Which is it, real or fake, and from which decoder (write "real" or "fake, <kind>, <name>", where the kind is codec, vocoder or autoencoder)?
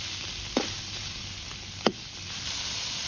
real